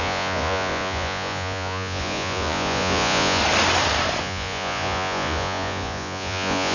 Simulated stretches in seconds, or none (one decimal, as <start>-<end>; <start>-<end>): 0.0-3.4; 4.2-6.7